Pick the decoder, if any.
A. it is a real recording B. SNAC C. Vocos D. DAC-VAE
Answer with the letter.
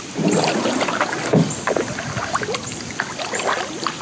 A